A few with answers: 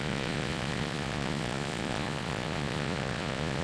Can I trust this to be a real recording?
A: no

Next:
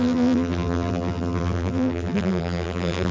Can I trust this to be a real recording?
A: no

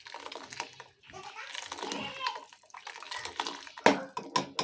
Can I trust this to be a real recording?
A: yes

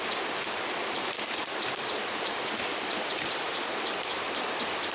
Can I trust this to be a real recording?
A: no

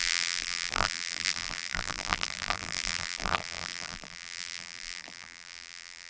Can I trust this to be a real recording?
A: no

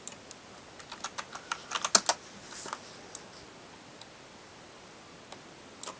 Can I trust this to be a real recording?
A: yes